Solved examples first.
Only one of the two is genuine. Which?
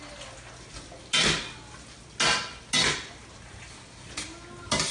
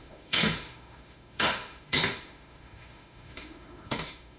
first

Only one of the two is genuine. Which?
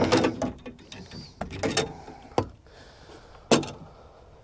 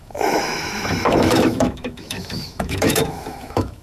first